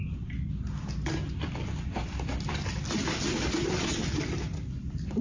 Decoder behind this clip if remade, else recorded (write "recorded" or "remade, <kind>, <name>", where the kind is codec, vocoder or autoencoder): recorded